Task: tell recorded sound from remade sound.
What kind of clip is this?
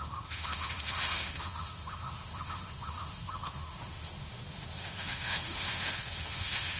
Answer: remade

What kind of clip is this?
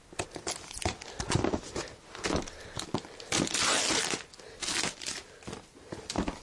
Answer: recorded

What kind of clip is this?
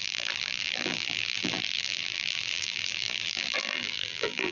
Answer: remade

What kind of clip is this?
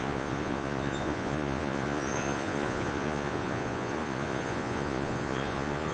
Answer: remade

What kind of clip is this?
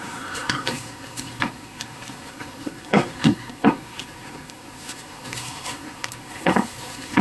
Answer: remade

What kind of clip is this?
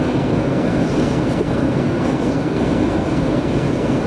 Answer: remade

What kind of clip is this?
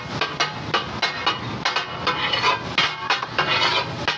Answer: recorded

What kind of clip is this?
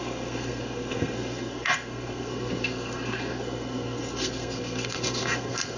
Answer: remade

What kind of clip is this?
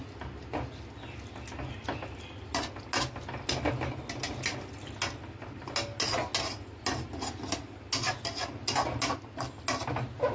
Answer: recorded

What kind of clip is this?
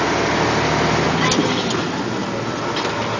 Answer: recorded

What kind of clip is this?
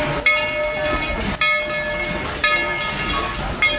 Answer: recorded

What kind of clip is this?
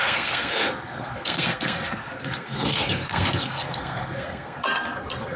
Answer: remade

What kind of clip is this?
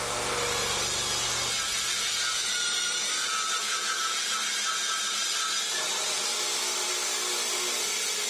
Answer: recorded